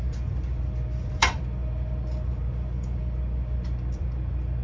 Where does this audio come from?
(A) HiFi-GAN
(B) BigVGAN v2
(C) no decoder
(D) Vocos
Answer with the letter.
B